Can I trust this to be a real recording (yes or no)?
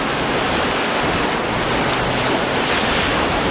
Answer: yes